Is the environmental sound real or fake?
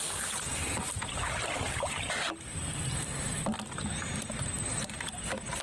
real